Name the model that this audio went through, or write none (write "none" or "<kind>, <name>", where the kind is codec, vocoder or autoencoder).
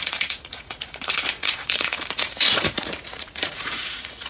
vocoder, Vocos